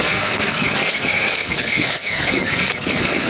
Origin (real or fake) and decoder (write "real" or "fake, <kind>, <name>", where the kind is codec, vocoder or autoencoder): fake, codec, SNAC